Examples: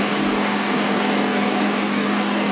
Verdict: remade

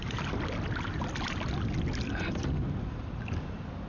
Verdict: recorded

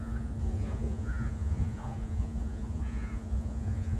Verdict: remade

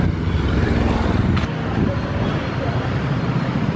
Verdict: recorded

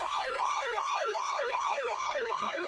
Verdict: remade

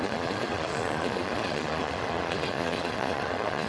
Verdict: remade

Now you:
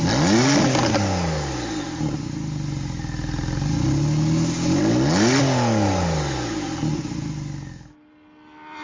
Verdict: recorded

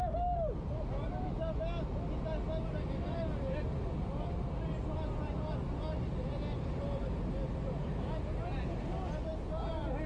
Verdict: recorded